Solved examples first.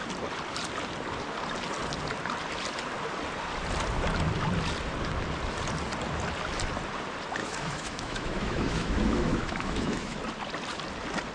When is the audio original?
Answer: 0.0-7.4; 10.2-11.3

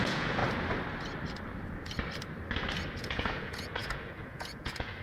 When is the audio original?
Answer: 0.4-3.0

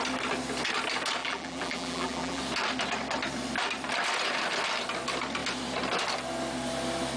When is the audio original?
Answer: 0.0-1.2; 2.4-7.2

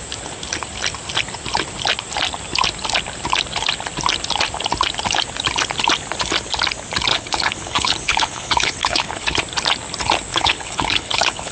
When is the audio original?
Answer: 0.0-7.1; 9.4-10.3

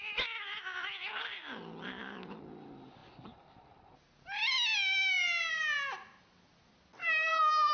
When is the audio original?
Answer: 0.0-7.0

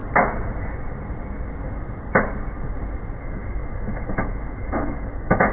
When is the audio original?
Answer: 0.0-3.2